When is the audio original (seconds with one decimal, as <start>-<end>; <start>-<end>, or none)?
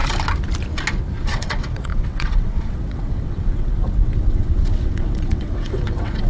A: 0.0-1.3